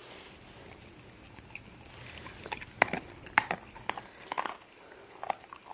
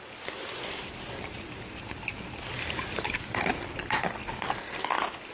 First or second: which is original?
first